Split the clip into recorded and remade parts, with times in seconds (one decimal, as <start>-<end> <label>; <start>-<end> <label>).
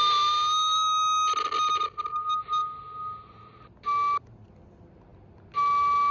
0.0-6.1 recorded